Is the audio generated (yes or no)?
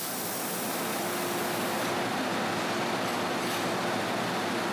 no